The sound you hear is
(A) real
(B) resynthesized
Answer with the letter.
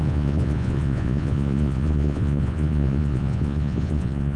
B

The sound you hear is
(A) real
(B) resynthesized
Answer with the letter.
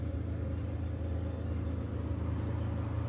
A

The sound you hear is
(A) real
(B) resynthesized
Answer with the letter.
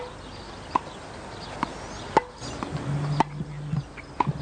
A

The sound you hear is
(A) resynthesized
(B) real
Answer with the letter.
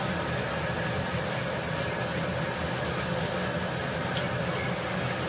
B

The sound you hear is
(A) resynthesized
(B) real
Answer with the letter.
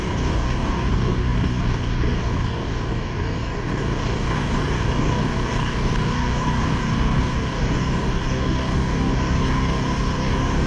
A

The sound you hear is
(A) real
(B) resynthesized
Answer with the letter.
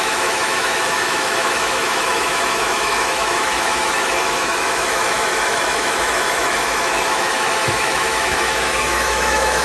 B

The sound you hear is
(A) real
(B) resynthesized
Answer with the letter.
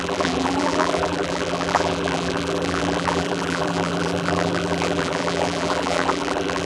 B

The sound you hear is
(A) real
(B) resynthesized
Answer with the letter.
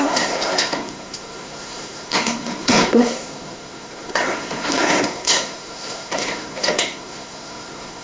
B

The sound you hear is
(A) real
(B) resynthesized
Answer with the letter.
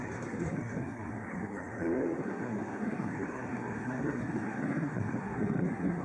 B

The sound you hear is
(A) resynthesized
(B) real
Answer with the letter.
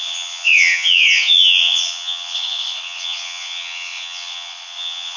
A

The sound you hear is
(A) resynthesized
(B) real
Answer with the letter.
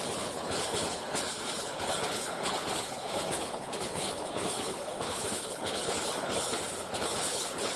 A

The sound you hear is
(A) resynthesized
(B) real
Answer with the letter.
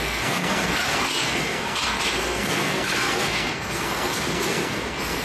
A